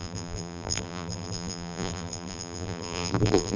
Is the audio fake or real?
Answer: fake